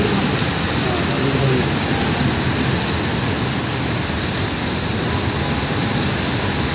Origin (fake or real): real